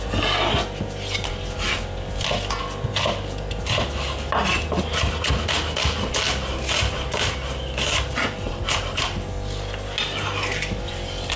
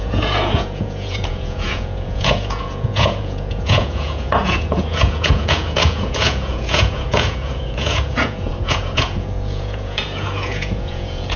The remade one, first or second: second